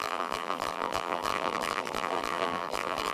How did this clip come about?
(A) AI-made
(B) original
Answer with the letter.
A